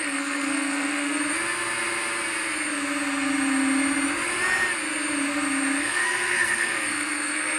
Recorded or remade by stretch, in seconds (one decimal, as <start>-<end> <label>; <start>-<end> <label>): 0.0-1.2 remade; 1.2-5.8 recorded; 5.8-7.6 remade